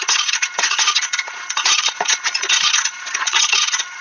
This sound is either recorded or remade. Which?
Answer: remade